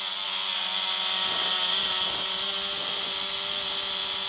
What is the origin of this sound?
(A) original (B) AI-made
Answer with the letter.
A